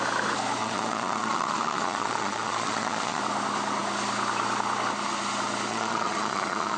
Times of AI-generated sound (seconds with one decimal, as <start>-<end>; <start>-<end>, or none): 0.6-3.2; 5.7-6.8